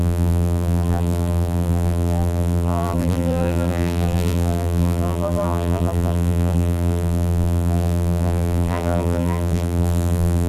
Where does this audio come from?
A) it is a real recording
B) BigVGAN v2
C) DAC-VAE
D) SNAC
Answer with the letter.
B